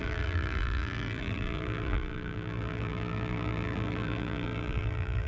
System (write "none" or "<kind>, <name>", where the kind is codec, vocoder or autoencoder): vocoder, BigVGAN v2